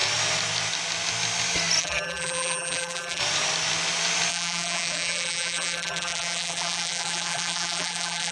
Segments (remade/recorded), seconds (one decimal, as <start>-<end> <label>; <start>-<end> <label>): 0.0-1.8 recorded; 1.8-3.2 remade; 3.2-4.3 recorded; 4.3-8.3 remade